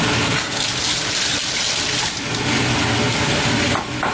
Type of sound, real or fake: real